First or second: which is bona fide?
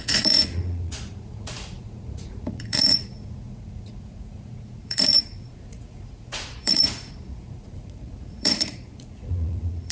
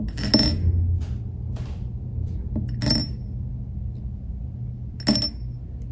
second